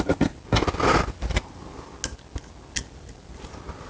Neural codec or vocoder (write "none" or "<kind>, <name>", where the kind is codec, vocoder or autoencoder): none